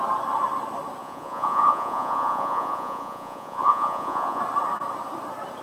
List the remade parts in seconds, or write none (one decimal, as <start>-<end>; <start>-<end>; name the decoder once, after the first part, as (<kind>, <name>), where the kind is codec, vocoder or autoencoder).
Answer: 1.0-4.4 (vocoder, Vocos)